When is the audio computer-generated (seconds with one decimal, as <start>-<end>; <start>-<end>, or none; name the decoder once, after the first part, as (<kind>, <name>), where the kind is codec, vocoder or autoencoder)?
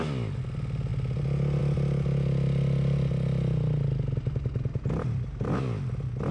none